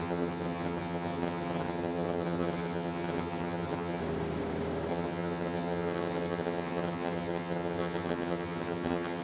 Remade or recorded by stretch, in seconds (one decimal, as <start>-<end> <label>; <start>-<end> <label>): 0.0-4.0 remade; 4.0-4.9 recorded; 4.9-9.2 remade